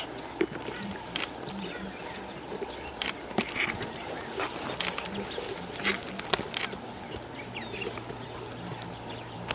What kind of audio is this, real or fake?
real